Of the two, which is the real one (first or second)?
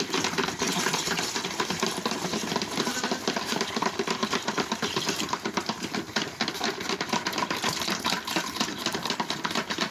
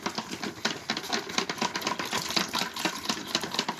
second